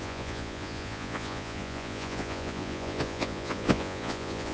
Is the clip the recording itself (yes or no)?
no